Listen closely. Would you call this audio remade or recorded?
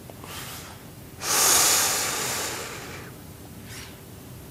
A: recorded